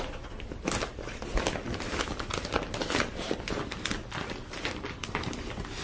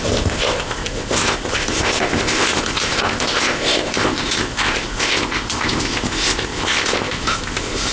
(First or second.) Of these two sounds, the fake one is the second